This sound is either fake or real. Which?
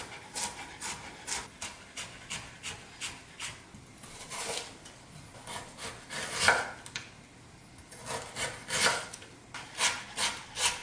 real